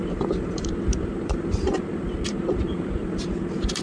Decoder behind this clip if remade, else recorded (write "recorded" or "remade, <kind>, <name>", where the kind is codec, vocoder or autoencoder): remade, vocoder, BigVGAN v2